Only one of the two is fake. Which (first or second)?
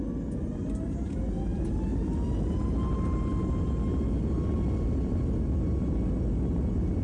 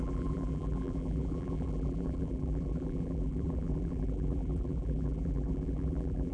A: second